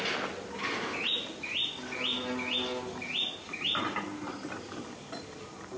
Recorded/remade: recorded